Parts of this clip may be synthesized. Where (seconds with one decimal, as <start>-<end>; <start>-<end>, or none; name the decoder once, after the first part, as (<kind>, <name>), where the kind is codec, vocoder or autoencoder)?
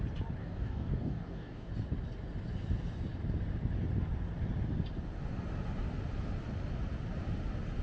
0.4-1.7 (codec, DAC)